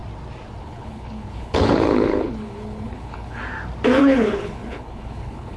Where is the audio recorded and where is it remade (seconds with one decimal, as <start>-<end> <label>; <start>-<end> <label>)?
0.0-0.6 recorded; 0.6-3.4 remade; 3.4-4.0 recorded; 4.0-5.6 remade